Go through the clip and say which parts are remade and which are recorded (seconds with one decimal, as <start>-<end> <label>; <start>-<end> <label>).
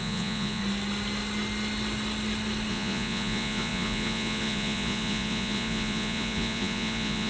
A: 0.0-0.6 remade; 0.6-2.7 recorded; 2.7-7.3 remade